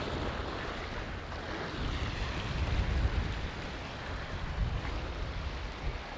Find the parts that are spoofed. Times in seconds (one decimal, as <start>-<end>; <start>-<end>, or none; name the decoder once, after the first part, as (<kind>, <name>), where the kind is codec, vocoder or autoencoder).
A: none